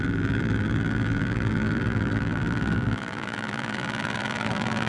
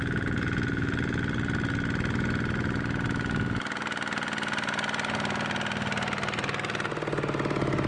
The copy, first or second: first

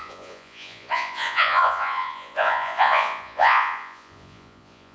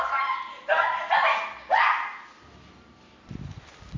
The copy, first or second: first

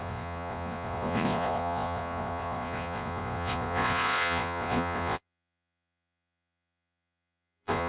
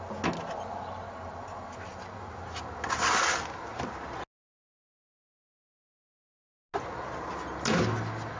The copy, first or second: first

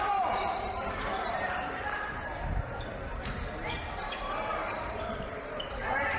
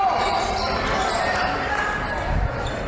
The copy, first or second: first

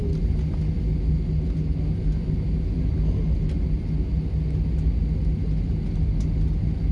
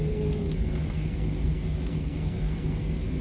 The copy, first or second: second